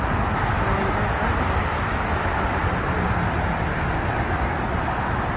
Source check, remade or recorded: recorded